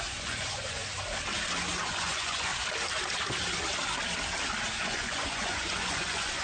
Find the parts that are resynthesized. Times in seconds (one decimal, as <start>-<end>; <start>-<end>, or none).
0.0-0.8; 1.8-2.5; 4.8-6.4